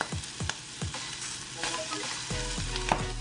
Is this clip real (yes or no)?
yes